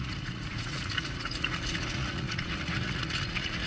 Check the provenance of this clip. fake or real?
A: fake